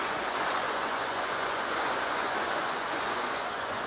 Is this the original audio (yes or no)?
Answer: no